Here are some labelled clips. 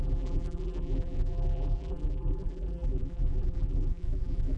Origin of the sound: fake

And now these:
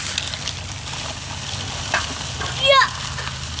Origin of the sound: real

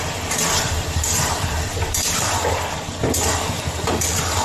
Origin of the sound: fake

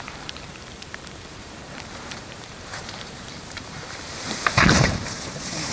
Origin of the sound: fake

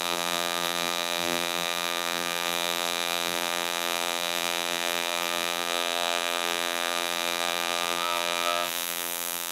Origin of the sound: fake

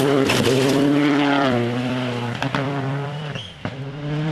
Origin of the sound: fake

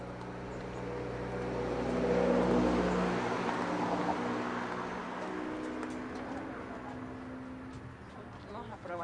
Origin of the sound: real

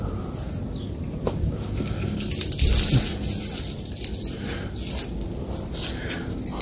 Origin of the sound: real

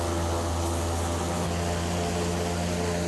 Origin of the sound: real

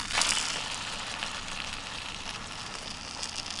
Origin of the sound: real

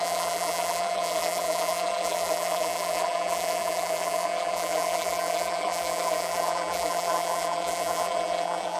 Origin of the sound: fake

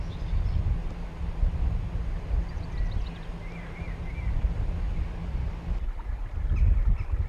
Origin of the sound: real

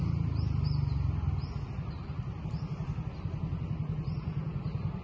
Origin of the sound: real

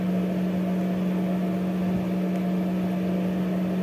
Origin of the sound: real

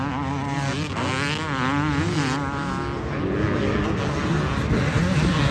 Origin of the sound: real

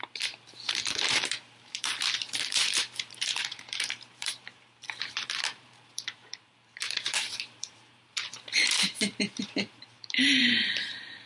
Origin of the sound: fake